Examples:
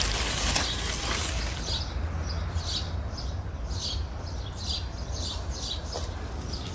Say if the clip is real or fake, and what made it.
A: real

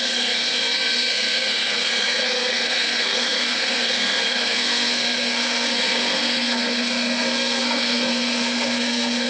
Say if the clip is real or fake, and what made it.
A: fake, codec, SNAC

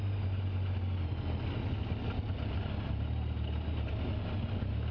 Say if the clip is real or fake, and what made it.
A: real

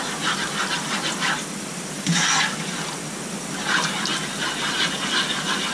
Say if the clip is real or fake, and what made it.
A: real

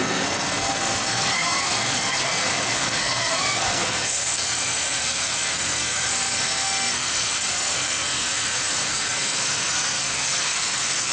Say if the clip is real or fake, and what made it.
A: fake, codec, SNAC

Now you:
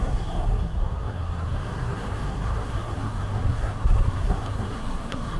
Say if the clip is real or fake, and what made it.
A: fake, codec, SNAC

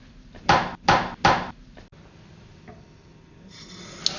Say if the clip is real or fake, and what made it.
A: real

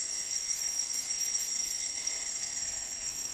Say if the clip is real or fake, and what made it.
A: fake, codec, SNAC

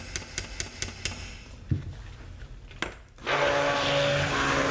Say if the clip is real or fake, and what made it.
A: real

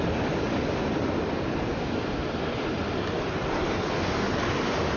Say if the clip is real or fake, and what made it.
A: real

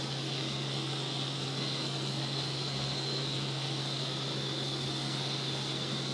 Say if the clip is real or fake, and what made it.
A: fake, codec, SNAC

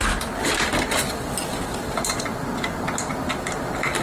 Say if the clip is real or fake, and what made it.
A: real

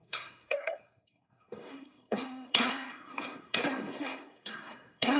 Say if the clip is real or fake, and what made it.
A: fake, codec, SNAC